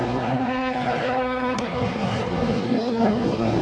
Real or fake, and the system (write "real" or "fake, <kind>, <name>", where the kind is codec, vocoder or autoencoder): fake, codec, SNAC